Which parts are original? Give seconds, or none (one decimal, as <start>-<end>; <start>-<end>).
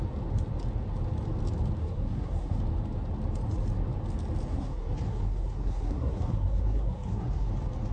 0.0-1.8; 2.6-4.5; 7.5-7.9